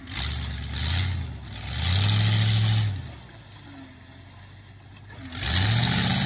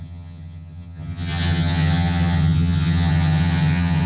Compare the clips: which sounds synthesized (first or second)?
second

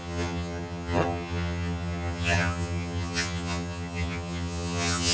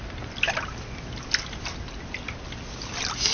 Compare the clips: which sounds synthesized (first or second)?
first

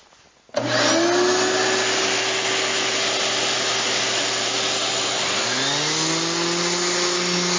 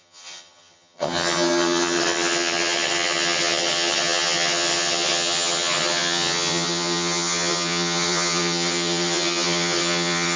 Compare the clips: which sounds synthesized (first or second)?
second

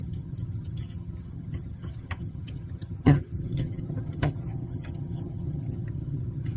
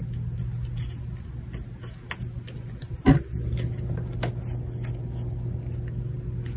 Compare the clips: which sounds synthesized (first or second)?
first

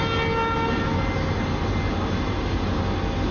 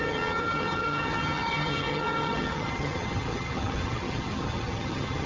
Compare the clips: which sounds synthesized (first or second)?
second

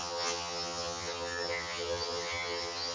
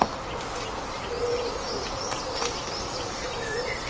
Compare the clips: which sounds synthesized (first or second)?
first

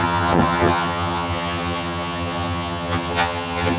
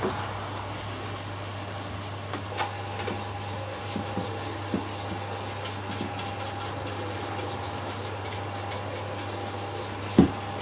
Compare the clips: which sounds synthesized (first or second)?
first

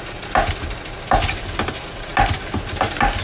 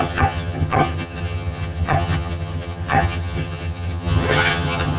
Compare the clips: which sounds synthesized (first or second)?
second